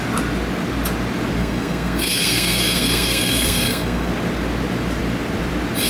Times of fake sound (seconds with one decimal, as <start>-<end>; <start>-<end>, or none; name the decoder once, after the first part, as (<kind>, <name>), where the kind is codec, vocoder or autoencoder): 1.4-4.1 (codec, SNAC)